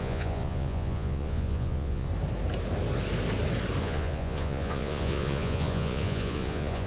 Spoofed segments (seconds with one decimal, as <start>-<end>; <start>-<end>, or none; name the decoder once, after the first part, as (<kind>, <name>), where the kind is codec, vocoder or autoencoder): 0.0-2.1 (vocoder, Vocos); 3.8-6.9